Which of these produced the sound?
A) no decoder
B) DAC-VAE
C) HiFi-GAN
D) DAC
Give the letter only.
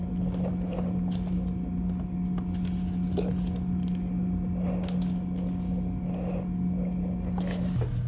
A